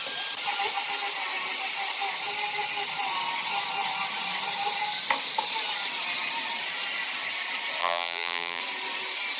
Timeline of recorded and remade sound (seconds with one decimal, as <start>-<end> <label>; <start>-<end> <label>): 0.0-7.8 recorded; 7.8-8.6 remade; 8.6-9.4 recorded